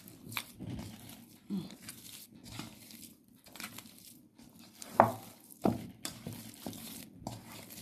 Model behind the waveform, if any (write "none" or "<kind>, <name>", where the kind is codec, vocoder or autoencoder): vocoder, BigVGAN v2